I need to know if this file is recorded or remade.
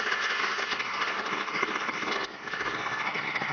remade